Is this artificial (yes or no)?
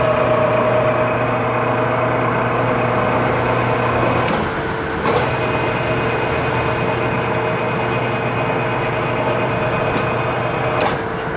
no